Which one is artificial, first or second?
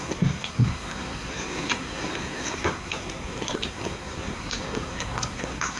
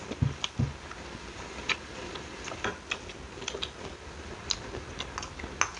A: first